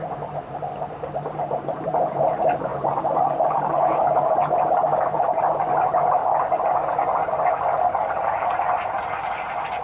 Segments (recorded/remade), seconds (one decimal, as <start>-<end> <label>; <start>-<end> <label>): 0.0-4.4 remade; 4.4-5.0 recorded; 5.0-6.2 remade; 6.2-8.1 recorded; 8.1-9.8 remade